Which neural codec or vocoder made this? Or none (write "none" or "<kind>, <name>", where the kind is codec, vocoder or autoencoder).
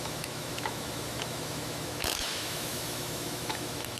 autoencoder, DAC-VAE